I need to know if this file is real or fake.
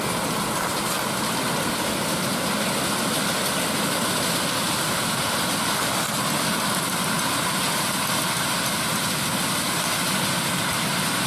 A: real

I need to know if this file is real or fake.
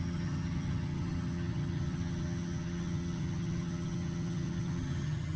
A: fake